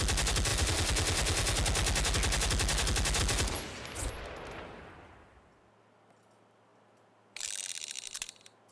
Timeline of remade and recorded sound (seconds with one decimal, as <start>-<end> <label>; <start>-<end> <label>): 0.0-8.7 recorded